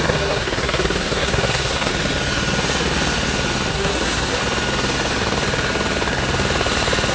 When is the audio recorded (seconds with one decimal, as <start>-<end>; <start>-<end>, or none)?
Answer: 1.9-3.7; 4.4-7.1

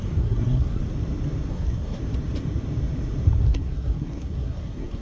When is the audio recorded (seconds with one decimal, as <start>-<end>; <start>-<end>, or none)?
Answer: 0.8-1.5; 2.0-3.4

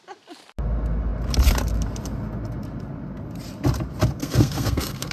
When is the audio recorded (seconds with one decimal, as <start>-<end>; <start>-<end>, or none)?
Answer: 0.0-4.2

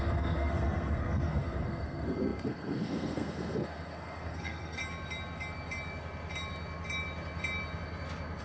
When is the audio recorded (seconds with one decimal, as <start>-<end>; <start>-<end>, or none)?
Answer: 4.8-8.4

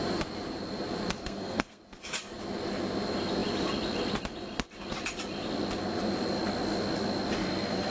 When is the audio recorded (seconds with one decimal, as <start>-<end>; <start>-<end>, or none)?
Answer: 0.0-1.2; 1.8-7.9